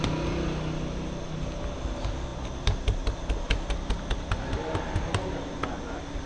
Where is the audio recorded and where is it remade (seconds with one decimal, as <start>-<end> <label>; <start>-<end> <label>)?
0.0-6.3 recorded